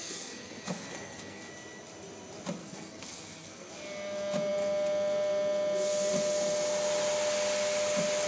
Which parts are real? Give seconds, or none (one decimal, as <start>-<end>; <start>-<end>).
1.5-2.6; 3.7-8.3